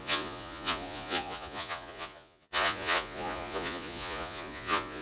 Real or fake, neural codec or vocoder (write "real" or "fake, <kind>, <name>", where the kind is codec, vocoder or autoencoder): fake, vocoder, Vocos